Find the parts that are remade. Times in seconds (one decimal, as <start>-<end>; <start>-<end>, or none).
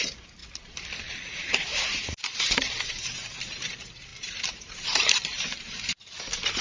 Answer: 0.0-0.4; 1.1-6.6